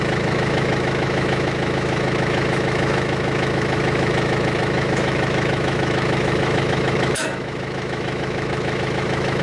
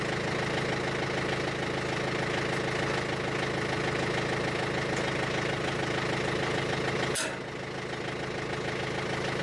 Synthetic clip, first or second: first